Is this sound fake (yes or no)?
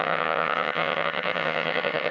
yes